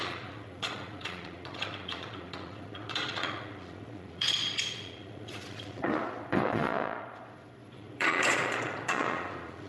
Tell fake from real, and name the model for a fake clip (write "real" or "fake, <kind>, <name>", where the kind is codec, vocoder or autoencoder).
fake, vocoder, Vocos